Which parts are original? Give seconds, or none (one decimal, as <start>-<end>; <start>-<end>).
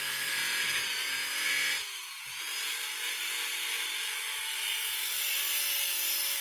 0.0-0.4; 2.8-6.4